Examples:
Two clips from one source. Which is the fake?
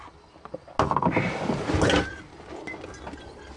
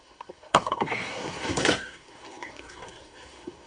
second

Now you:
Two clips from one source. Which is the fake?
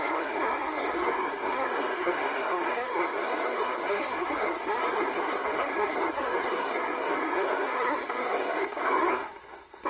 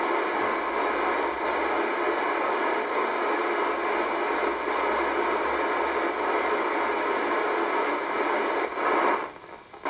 first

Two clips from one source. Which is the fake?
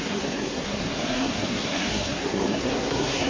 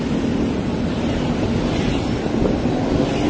first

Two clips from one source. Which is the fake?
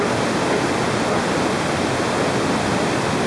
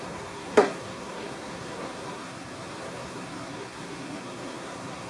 second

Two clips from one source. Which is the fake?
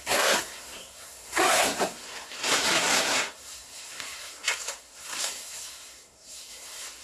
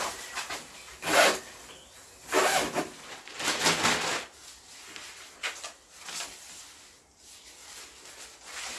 first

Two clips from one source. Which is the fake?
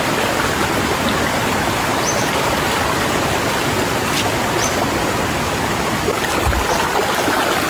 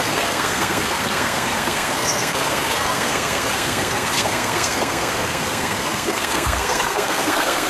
second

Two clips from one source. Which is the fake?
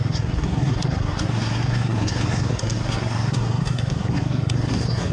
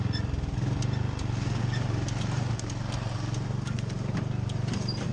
first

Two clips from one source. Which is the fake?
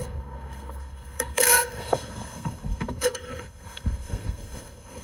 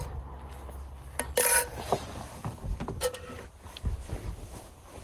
first